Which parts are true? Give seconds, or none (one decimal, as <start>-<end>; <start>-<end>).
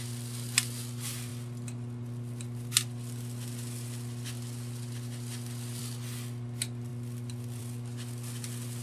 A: 0.0-8.8